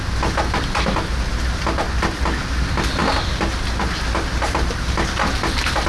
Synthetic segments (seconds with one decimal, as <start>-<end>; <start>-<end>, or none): none